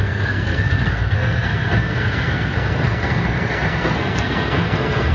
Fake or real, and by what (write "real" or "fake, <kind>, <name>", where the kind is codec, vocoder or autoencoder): fake, codec, SNAC